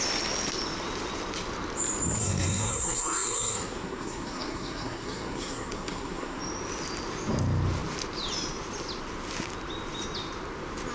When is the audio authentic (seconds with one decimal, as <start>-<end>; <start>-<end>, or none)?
0.0-2.2; 6.4-10.9

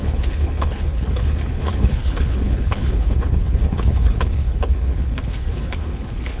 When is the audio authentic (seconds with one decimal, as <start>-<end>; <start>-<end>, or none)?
none

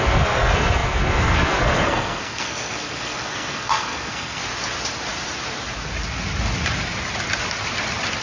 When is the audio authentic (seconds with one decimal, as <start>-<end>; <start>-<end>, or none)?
4.4-8.2

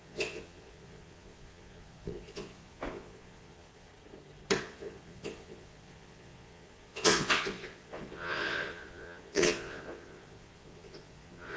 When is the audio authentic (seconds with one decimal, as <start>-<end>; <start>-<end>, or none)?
3.9-4.6

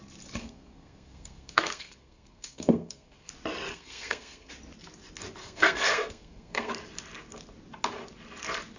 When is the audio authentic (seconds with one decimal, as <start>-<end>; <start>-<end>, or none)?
0.0-0.4; 3.3-3.7; 4.5-5.4; 6.7-8.8

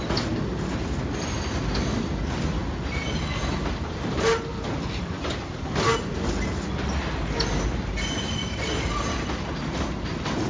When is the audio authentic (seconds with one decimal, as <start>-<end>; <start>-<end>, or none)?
0.0-10.5